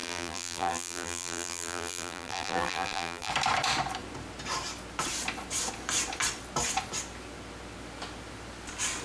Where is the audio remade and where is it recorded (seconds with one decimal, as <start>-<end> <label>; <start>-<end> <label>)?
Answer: 0.0-3.3 remade; 3.3-9.0 recorded